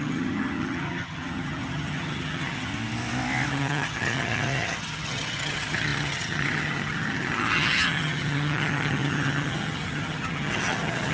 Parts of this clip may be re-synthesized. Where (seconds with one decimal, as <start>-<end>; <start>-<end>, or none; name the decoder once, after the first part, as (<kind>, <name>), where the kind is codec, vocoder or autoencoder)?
0.0-2.7 (vocoder, HiFi-GAN); 3.5-11.1